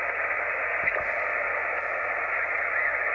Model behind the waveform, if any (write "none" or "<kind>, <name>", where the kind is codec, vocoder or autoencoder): none